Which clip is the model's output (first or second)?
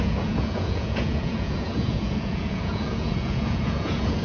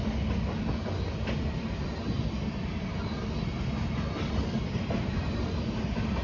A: first